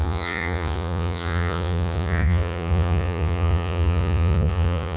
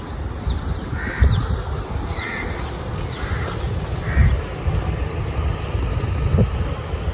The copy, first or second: first